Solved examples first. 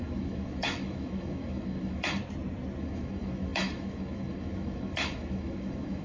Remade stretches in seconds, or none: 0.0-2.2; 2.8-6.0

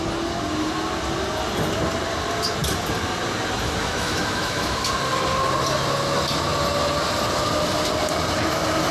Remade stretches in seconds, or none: 3.8-4.9

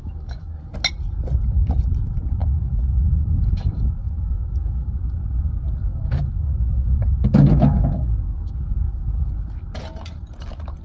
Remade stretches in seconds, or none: 0.0-0.5; 2.4-5.0; 5.8-8.5

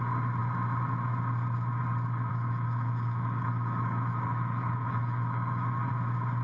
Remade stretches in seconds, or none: 2.3-5.9

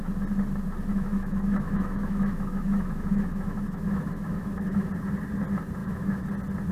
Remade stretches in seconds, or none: 0.9-4.9; 5.8-6.3

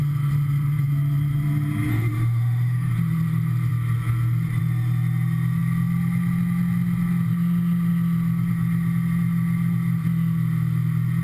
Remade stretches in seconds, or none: 1.9-2.9

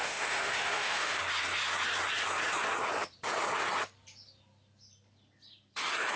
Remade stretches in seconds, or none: 0.0-1.2